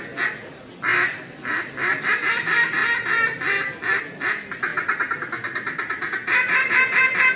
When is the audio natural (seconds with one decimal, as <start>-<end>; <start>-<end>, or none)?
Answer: 0.0-7.4